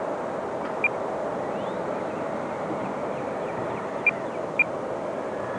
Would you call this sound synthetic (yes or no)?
no